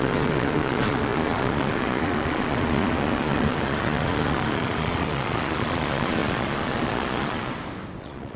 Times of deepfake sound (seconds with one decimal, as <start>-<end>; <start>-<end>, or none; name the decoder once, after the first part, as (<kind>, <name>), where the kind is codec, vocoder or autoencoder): 0.0-7.5 (vocoder, Vocos); 8.0-8.4